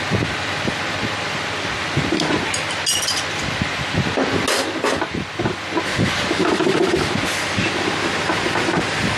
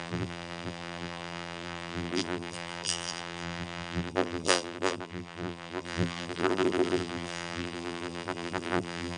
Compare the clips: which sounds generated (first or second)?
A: second